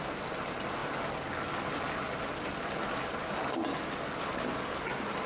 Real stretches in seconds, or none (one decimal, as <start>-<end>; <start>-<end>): 0.0-5.3